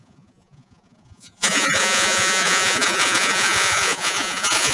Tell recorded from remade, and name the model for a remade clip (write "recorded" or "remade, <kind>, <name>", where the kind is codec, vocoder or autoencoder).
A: remade, vocoder, Vocos